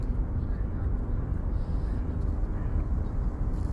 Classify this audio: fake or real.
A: real